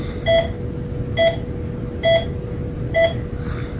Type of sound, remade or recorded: recorded